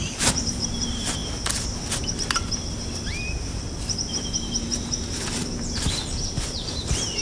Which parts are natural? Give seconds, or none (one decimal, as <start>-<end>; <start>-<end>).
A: 1.2-4.2